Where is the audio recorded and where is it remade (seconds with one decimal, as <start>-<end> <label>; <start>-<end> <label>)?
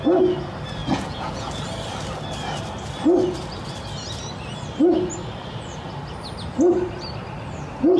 0.0-0.8 recorded; 0.8-1.5 remade; 1.5-8.0 recorded